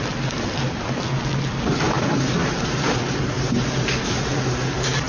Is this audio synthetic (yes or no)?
no